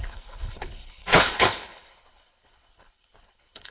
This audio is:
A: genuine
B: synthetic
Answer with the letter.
B